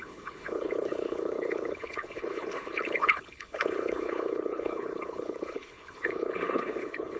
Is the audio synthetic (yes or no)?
yes